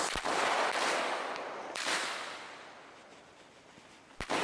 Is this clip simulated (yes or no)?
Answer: no